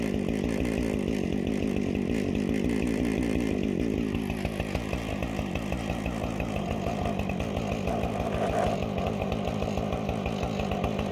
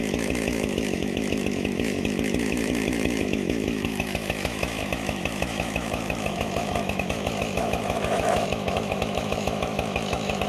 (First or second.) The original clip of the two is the first